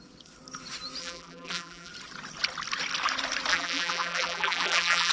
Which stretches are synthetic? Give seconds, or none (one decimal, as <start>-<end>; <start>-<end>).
1.0-1.9; 3.5-5.1